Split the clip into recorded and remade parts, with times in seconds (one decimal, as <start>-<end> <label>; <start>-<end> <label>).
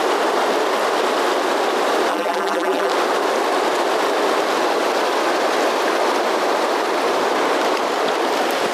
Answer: 0.0-2.1 recorded; 2.1-2.9 remade; 2.9-8.7 recorded